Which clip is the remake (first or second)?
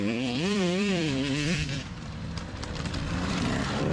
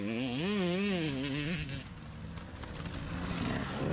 first